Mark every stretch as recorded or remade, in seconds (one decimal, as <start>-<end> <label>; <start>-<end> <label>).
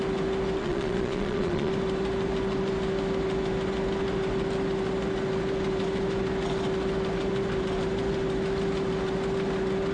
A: 0.0-0.6 recorded; 0.6-1.7 remade; 1.7-9.9 recorded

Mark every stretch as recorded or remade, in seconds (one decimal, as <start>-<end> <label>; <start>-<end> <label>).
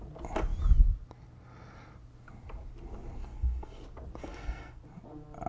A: 0.0-3.2 recorded; 3.2-3.8 remade; 3.8-4.2 recorded; 4.2-4.8 remade; 4.8-5.5 recorded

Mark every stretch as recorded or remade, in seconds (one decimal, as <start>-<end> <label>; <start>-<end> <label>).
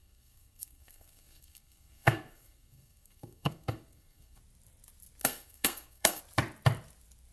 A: 0.0-4.4 remade; 4.4-5.2 recorded; 5.2-6.2 remade; 6.2-7.3 recorded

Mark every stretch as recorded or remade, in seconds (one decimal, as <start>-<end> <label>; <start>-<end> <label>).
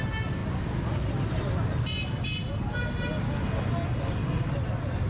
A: 0.0-5.1 recorded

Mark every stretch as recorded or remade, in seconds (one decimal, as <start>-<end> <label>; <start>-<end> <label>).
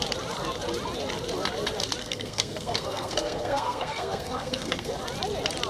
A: 0.0-2.0 recorded; 2.0-4.9 remade; 4.9-5.7 recorded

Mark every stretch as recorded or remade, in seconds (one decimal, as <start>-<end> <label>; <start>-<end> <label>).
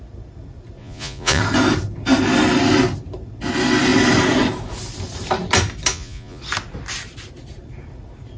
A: 0.0-0.8 recorded; 0.8-1.4 remade; 1.4-5.9 recorded; 5.9-6.4 remade; 6.4-8.4 recorded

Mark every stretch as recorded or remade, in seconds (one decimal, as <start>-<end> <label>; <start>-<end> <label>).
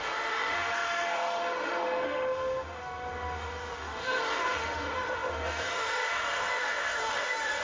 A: 0.0-7.6 remade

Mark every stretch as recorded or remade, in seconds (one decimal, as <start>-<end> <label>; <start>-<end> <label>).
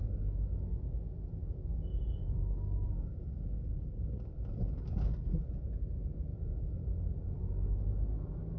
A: 0.0-1.4 recorded; 1.4-4.3 remade; 4.3-8.6 recorded